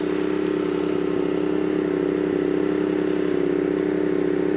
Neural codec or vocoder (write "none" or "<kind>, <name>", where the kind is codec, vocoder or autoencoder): none